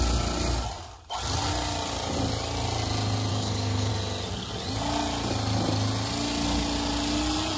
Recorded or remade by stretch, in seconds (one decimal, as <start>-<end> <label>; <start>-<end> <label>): 0.0-3.3 recorded; 3.3-3.9 remade; 3.9-7.6 recorded